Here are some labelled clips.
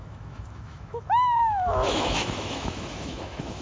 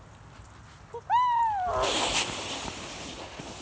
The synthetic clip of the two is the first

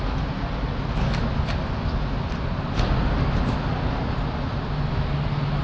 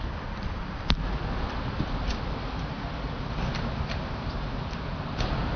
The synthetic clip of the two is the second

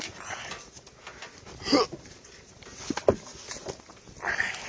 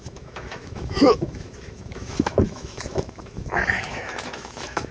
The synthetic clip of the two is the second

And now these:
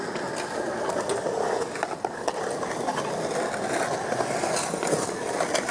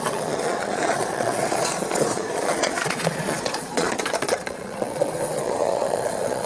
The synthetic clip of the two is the second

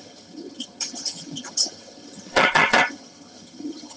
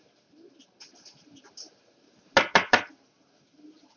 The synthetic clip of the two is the first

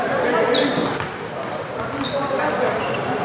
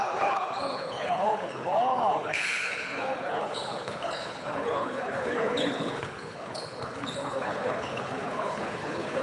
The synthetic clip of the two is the second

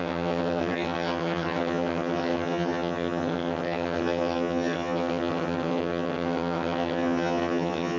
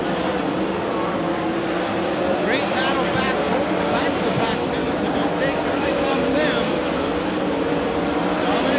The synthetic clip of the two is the first